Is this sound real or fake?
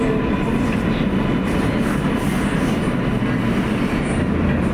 real